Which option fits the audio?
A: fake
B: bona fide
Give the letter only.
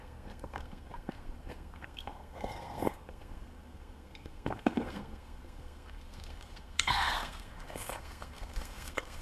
A